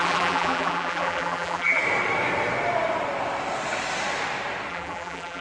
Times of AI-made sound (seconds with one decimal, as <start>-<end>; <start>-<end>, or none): 0.0-1.8; 4.7-5.4